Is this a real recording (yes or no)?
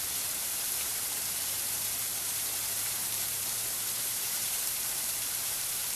no